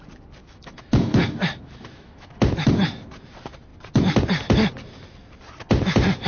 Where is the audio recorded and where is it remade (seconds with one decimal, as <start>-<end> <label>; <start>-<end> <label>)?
0.0-0.4 recorded; 0.4-2.4 remade; 2.4-6.3 recorded